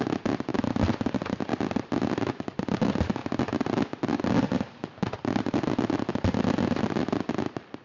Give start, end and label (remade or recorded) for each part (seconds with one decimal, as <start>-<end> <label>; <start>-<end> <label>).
0.0-7.8 recorded